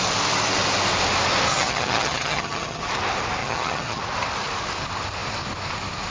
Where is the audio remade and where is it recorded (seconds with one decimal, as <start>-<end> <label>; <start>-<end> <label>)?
0.0-1.5 recorded; 1.5-2.8 remade; 2.8-3.4 recorded; 3.4-4.0 remade; 4.0-6.1 recorded